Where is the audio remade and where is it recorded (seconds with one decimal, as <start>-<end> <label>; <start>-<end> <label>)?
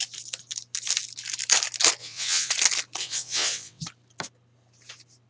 0.0-2.0 recorded; 2.0-2.5 remade; 2.5-3.0 recorded; 3.0-3.8 remade; 3.8-5.3 recorded